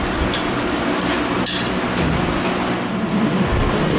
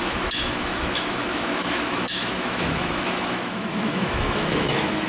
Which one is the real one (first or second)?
first